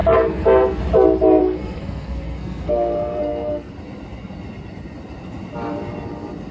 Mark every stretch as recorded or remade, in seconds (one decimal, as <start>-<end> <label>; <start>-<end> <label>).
0.0-0.8 remade; 0.8-1.4 recorded; 1.4-3.7 remade; 3.7-6.5 recorded